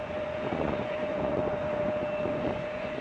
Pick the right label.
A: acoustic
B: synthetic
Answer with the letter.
B